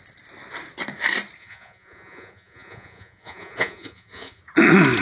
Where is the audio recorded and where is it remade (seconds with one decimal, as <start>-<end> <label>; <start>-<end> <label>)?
0.0-1.4 recorded; 1.4-4.4 remade; 4.4-5.0 recorded